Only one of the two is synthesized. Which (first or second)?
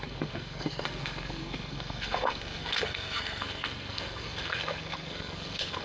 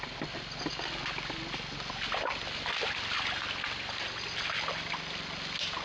first